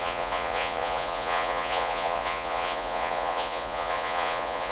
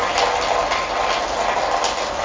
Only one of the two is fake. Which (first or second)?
first